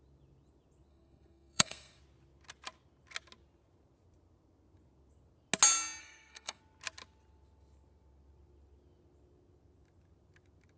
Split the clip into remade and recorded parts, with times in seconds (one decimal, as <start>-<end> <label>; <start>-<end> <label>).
0.0-0.9 recorded; 0.9-2.0 remade; 2.0-6.0 recorded; 6.0-6.6 remade; 6.6-10.8 recorded